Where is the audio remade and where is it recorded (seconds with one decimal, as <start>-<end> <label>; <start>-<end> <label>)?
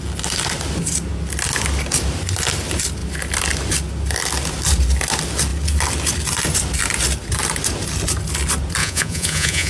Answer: 0.0-8.8 recorded; 8.8-9.7 remade